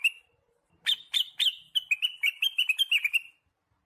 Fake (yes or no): no